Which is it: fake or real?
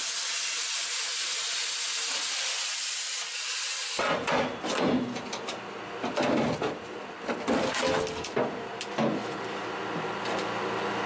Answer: real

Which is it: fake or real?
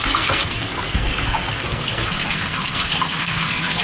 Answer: fake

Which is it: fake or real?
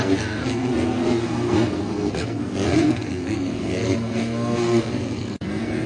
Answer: fake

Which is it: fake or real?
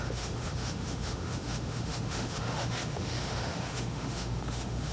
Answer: fake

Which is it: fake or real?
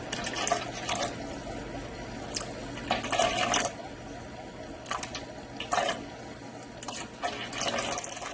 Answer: real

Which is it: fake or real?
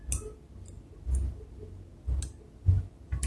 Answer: real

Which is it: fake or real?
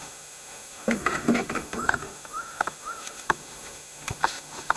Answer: fake